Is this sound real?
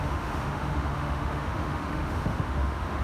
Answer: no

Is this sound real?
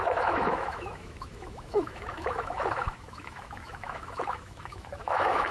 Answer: no